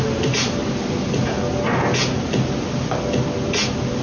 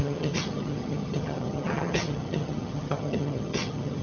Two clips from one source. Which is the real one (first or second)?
first